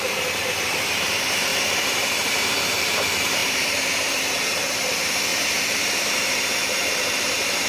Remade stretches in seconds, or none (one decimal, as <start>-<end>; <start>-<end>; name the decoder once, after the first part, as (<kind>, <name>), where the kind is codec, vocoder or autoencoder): 0.0-7.7 (vocoder, BigVGAN v2)